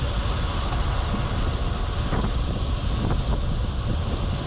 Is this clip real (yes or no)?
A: yes